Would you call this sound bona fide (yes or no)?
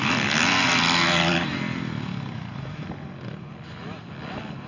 yes